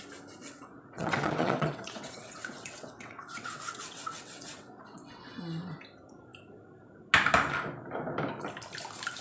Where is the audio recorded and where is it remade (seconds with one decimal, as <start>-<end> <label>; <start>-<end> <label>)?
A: 0.0-0.4 recorded; 0.4-5.3 remade; 5.3-9.2 recorded